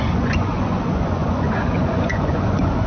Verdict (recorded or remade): remade